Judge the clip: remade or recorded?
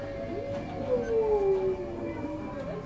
recorded